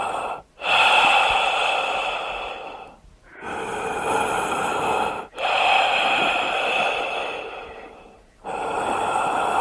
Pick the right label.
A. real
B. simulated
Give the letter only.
A